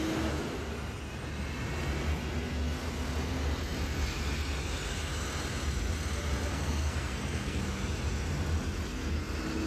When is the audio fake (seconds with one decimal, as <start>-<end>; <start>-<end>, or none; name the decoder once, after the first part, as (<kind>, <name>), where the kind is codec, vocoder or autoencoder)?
6.5-7.6 (codec, SNAC)